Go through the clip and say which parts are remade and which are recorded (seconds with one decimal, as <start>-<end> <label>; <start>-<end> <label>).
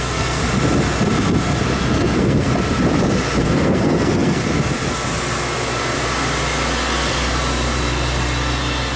0.0-0.4 remade; 0.4-1.8 recorded; 1.8-2.5 remade; 2.5-3.4 recorded; 3.4-4.4 remade; 4.4-9.0 recorded